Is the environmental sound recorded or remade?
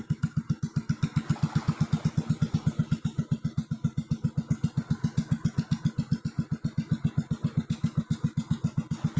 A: recorded